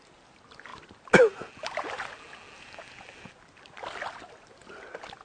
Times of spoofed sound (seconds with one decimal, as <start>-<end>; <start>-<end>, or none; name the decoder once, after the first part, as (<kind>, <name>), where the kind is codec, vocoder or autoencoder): none